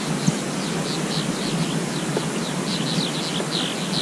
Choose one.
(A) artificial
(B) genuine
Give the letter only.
B